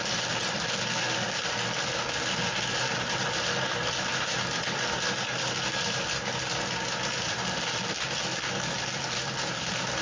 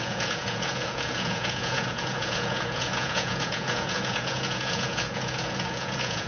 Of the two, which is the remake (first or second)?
second